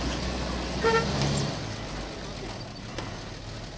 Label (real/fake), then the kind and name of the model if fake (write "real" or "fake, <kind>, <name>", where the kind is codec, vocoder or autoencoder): real